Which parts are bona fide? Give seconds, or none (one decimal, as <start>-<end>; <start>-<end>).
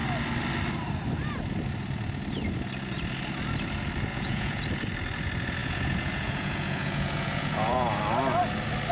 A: 0.0-4.1; 4.6-5.6; 8.0-8.9